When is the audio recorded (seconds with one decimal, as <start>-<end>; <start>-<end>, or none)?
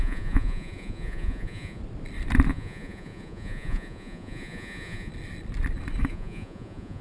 1.8-2.5; 5.1-6.1